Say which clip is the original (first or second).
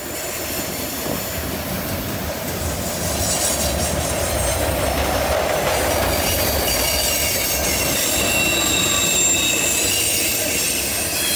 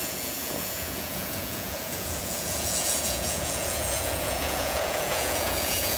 first